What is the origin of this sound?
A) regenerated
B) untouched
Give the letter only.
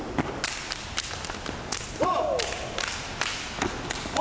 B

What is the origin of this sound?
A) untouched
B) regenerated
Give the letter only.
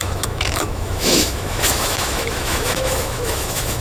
B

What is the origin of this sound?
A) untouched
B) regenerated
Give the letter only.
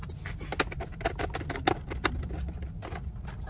A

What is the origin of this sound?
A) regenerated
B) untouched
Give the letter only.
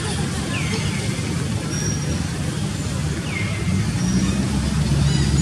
B